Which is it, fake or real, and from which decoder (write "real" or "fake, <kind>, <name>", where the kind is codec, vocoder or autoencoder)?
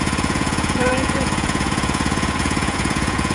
fake, vocoder, Vocos